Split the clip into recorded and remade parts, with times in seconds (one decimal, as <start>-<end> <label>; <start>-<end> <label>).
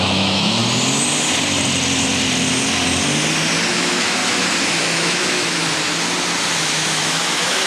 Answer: 0.0-0.6 remade; 0.6-3.7 recorded; 3.7-4.2 remade; 4.2-4.8 recorded; 4.8-5.6 remade; 5.6-6.6 recorded; 6.6-7.7 remade